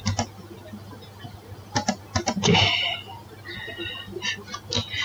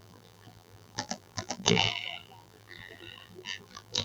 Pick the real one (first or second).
first